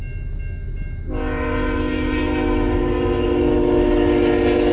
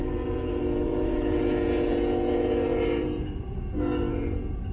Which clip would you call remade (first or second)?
second